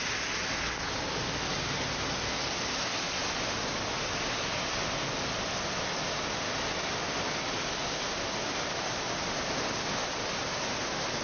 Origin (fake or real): real